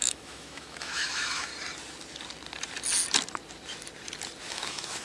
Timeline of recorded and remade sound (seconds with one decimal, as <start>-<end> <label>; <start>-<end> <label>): 0.0-1.5 remade; 1.5-4.5 recorded; 4.5-5.0 remade